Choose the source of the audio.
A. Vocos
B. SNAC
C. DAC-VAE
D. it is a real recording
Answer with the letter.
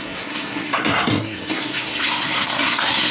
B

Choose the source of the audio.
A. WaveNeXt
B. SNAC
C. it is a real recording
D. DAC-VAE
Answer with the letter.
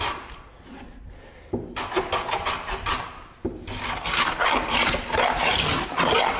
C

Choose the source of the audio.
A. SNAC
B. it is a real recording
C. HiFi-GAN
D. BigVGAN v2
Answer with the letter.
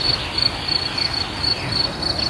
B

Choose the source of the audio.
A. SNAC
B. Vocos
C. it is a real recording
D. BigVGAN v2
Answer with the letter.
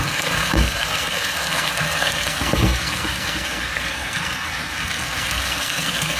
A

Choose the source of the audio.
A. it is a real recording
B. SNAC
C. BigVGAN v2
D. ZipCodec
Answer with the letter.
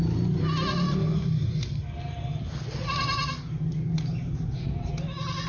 A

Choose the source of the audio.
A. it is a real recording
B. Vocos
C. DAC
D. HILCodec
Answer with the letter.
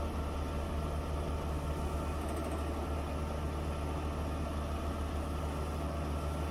A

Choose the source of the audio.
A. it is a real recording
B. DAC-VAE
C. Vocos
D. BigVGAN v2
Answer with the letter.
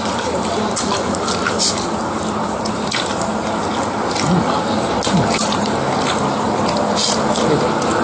A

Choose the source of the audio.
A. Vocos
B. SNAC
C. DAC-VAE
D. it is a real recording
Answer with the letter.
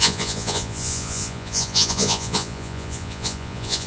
A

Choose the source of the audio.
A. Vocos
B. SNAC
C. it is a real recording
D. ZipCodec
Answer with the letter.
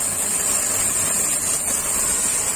C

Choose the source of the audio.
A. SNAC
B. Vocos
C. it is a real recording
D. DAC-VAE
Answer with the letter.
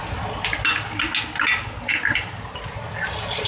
C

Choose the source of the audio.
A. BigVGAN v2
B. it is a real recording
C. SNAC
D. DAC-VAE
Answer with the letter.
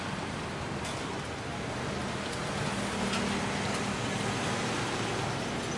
B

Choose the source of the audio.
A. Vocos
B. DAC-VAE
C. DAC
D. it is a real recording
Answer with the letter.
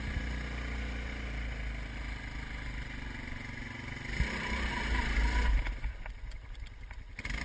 D